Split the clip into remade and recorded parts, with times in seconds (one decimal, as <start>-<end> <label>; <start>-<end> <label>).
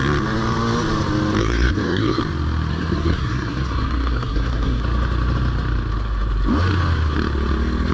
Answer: 0.0-1.4 recorded; 1.4-2.2 remade; 2.2-2.7 recorded; 2.7-4.8 remade; 4.8-7.9 recorded